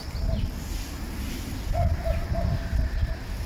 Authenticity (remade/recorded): recorded